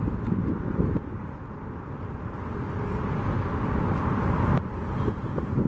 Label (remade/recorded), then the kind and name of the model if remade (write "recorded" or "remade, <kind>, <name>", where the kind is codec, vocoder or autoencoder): recorded